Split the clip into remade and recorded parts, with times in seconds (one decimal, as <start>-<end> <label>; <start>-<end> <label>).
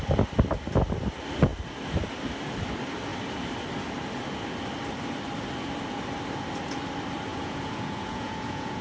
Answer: 0.0-7.3 recorded; 7.3-8.8 remade